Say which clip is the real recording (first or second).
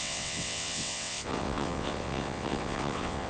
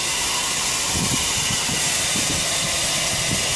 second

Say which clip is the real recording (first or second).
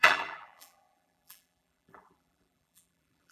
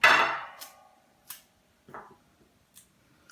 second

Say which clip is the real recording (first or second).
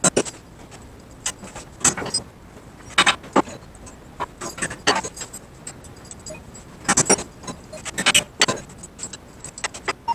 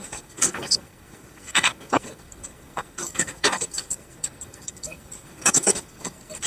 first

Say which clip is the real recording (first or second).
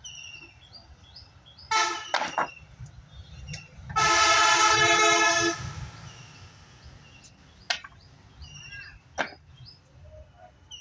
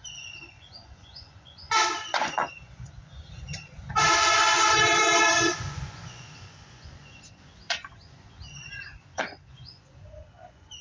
first